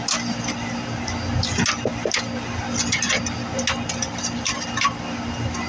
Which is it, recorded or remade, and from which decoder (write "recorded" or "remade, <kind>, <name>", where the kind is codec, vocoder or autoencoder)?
recorded